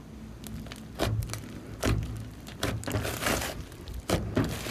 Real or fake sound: real